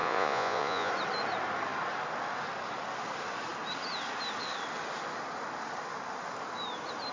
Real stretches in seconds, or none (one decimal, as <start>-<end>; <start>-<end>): 0.9-7.1